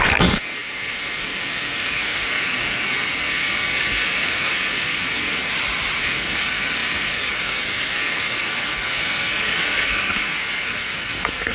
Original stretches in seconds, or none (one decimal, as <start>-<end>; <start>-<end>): 5.5-6.0